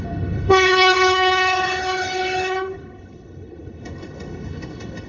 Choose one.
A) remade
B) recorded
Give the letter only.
A